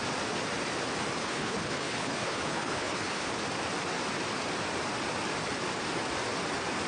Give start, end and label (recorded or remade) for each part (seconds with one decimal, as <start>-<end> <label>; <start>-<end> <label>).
0.0-1.2 recorded; 1.2-3.3 remade; 3.3-6.9 recorded